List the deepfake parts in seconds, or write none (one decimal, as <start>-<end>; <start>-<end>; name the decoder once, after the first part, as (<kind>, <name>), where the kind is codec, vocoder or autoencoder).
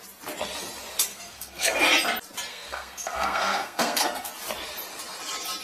1.1-1.8 (codec, SNAC); 2.5-4.3